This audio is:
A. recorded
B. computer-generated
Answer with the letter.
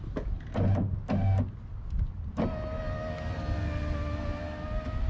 A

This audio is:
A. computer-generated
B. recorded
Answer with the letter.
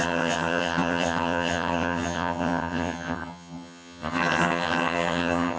A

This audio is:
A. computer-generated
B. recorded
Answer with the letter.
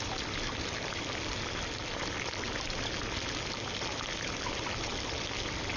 B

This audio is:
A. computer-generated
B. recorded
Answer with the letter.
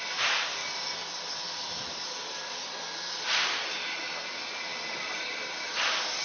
A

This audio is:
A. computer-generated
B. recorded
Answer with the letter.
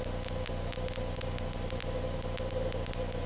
B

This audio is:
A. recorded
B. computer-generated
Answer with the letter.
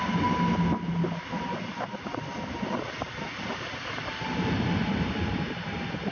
A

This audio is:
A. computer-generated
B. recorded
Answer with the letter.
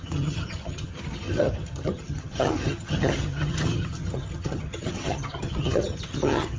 A